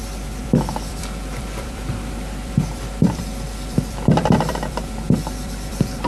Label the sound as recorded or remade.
remade